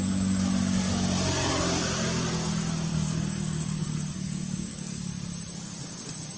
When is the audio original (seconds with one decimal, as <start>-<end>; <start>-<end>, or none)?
0.0-2.9; 5.1-6.4